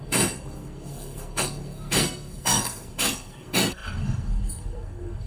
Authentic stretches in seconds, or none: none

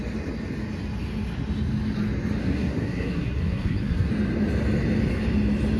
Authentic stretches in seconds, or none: 0.0-2.4; 4.1-5.8